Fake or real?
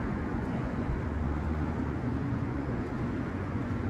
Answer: fake